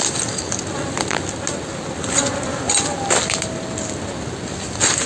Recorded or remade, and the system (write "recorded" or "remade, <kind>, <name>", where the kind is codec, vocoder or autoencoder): recorded